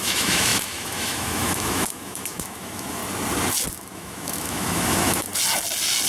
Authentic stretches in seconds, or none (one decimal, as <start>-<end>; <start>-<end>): 3.0-3.7; 5.3-6.1